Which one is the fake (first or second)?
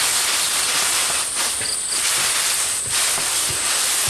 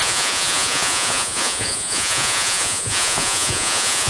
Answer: second